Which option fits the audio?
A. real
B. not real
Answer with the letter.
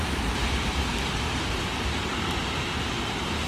B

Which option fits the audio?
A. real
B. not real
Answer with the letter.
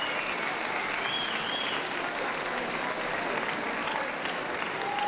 A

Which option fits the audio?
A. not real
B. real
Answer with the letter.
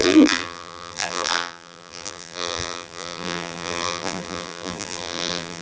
A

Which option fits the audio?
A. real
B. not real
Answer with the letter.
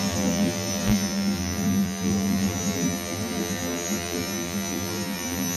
B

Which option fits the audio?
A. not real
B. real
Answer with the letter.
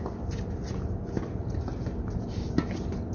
B